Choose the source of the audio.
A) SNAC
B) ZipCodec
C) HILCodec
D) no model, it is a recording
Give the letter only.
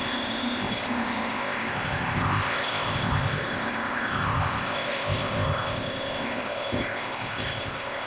B